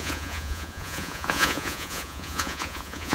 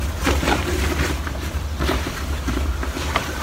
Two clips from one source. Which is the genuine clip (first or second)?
second